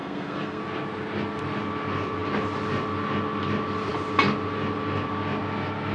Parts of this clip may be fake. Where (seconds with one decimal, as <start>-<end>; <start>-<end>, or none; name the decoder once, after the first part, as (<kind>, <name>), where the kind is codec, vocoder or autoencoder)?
0.0-0.6 (codec, SNAC)